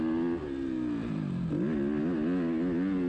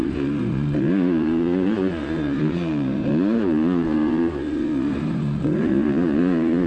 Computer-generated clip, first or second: second